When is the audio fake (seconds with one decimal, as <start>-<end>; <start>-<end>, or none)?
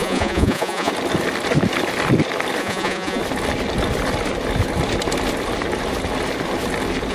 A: 0.0-0.9; 2.6-3.2